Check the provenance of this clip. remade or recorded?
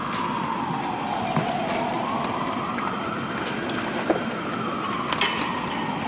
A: recorded